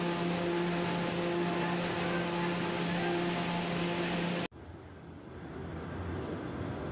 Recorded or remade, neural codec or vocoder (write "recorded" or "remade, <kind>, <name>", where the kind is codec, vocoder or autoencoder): recorded